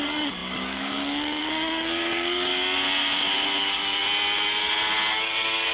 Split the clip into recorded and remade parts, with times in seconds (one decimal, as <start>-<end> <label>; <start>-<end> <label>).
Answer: 0.0-2.5 remade; 2.5-3.6 recorded; 3.6-4.0 remade; 4.0-5.1 recorded; 5.1-5.7 remade